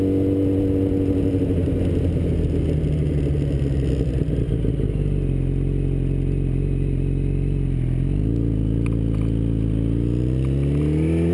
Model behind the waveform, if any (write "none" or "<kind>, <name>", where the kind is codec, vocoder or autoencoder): none